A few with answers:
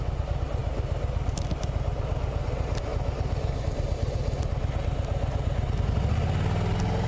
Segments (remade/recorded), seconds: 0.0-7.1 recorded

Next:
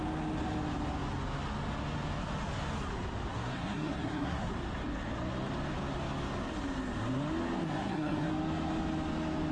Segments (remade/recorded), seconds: 0.0-3.3 recorded; 3.3-4.5 remade; 4.5-7.6 recorded; 7.6-8.3 remade; 8.3-9.5 recorded

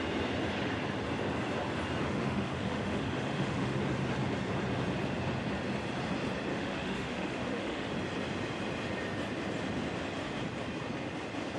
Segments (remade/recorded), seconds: 0.0-2.0 recorded; 2.0-3.8 remade; 3.8-6.5 recorded; 6.5-7.9 remade; 7.9-11.6 recorded